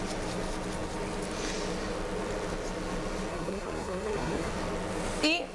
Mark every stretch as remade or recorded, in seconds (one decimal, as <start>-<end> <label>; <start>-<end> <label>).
0.0-3.3 recorded; 3.3-4.5 remade; 4.5-5.5 recorded